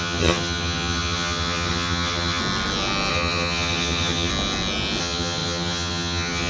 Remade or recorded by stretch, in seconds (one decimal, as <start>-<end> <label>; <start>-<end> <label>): 0.0-2.4 remade; 2.4-3.1 recorded; 3.1-4.3 remade; 4.3-5.0 recorded; 5.0-6.5 remade